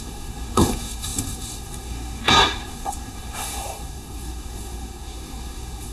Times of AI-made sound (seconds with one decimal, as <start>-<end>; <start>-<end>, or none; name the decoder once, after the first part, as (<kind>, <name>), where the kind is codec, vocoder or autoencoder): 0.0-5.9 (codec, SNAC)